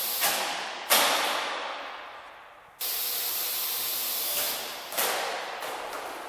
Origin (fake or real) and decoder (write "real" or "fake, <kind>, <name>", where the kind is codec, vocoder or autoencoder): real